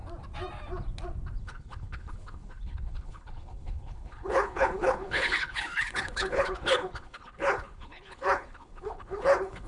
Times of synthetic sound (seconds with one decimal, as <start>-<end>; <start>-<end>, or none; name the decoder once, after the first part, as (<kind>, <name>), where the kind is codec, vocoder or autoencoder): 1.4-9.7 (codec, HILCodec)